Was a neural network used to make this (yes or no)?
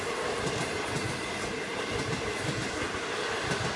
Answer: no